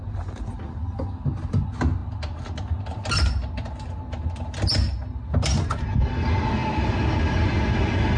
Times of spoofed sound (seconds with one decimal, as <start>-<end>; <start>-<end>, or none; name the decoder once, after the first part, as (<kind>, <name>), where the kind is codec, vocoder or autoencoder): none